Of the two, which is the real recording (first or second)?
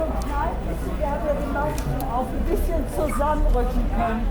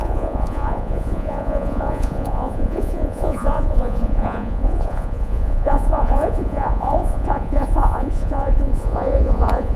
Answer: first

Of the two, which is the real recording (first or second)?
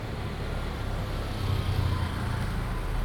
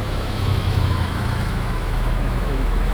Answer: first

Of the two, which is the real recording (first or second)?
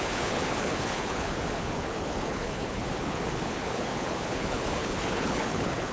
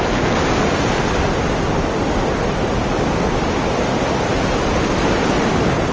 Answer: second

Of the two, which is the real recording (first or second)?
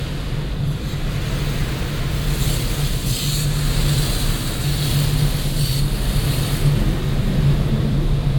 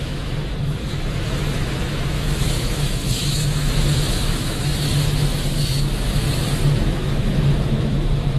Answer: first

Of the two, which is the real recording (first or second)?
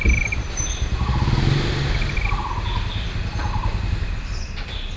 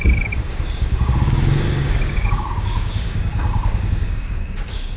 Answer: first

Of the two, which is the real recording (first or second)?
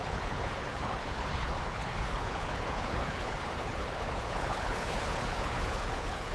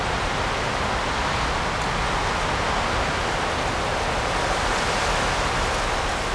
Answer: second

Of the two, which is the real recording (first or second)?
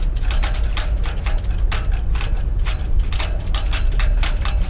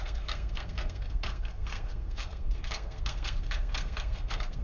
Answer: first